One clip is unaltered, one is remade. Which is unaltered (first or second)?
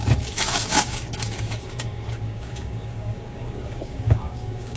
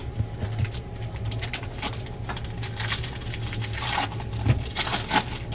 second